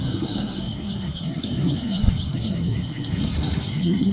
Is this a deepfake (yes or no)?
yes